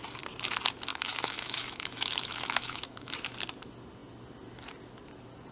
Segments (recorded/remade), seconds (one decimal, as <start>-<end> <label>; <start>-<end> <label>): 0.0-0.9 recorded; 0.9-3.1 remade; 3.1-5.5 recorded